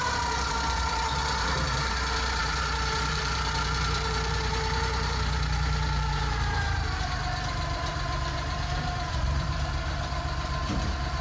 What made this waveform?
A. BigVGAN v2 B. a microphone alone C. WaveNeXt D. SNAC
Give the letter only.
A